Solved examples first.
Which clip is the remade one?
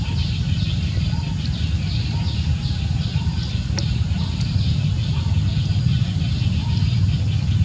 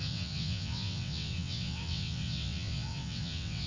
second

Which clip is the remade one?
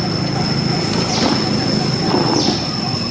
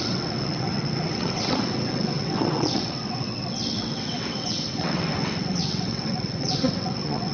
second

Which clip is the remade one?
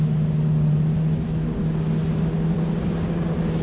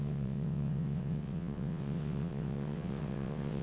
second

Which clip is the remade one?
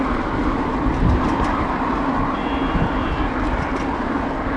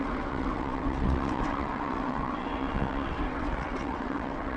second